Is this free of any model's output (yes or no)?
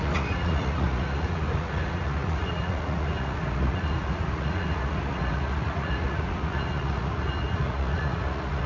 no